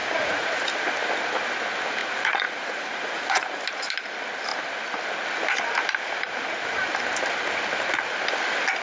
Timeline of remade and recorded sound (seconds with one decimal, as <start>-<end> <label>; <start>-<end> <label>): 0.0-0.6 remade; 0.6-2.0 recorded; 2.0-3.6 remade; 3.6-8.8 recorded

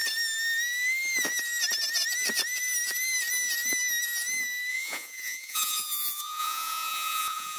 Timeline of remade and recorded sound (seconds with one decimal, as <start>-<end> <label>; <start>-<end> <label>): 0.0-4.7 recorded; 4.7-7.6 remade

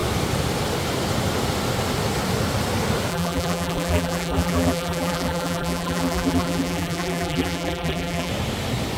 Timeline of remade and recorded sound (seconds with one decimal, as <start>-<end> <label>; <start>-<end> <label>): 0.0-3.1 recorded; 3.1-8.3 remade; 8.3-9.0 recorded